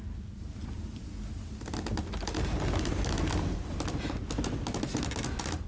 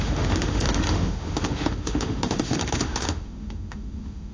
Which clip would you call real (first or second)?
first